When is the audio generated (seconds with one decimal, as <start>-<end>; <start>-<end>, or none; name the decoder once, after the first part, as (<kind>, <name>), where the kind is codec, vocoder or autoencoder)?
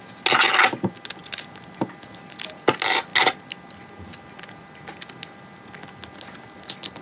none